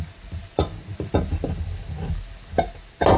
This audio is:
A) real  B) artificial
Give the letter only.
A